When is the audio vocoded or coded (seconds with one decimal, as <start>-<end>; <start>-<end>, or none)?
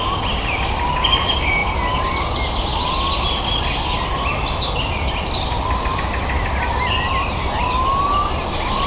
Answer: none